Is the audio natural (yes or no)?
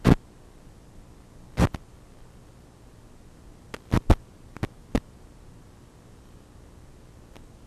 yes